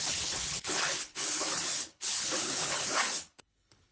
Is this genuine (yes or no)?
no